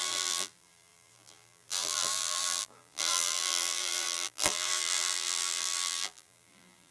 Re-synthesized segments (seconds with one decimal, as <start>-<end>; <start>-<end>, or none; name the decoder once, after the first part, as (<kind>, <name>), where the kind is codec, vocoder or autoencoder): 0.0-6.9 (vocoder, BigVGAN v2)